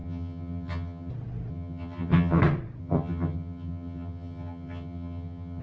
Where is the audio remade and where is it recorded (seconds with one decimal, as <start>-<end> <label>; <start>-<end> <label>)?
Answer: 0.0-1.1 remade; 1.1-1.5 recorded; 1.5-2.4 remade; 2.4-2.8 recorded; 2.8-5.6 remade